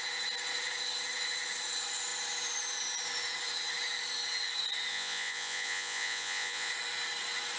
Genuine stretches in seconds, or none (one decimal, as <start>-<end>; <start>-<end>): 0.0-4.9; 6.7-7.6